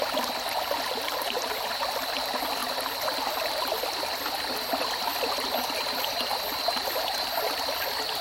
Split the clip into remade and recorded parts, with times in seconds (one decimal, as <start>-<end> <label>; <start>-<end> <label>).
0.0-8.2 recorded